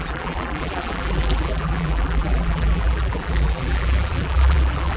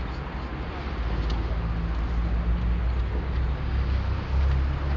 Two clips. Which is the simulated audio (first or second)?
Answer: first